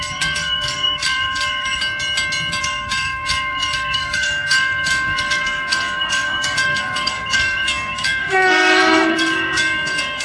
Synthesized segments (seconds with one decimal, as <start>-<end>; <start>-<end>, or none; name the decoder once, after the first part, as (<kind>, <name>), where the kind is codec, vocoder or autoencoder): 0.0-1.8 (codec, SNAC); 2.6-10.2